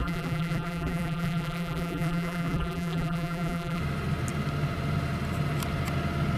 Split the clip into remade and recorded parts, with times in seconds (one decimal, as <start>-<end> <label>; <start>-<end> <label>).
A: 0.0-3.8 remade; 3.8-6.4 recorded